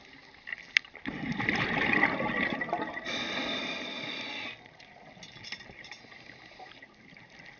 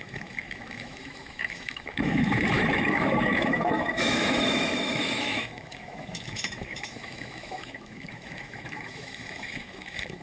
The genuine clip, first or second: first